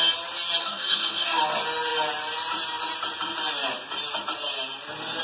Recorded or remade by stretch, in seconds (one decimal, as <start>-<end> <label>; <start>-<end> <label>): 0.0-0.6 recorded; 0.6-1.4 remade; 1.4-5.2 recorded